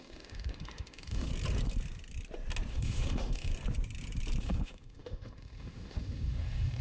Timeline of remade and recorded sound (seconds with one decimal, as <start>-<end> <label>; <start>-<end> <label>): 0.0-1.3 remade; 1.3-2.7 recorded; 2.7-3.5 remade; 3.5-4.4 recorded; 4.4-6.8 remade